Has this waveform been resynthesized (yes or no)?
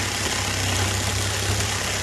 no